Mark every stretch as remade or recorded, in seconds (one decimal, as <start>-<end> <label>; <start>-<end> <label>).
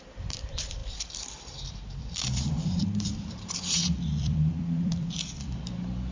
0.0-6.1 remade